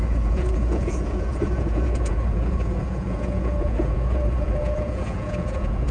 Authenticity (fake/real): fake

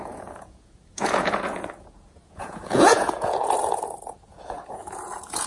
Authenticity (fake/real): fake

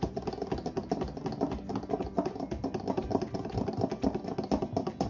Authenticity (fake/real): real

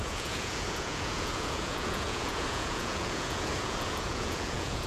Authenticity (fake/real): fake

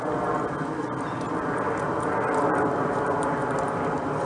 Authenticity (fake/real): real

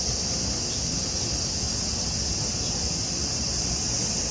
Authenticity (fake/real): real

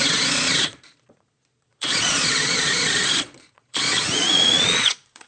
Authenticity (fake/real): fake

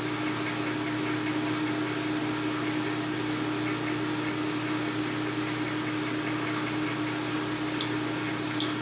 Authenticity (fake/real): real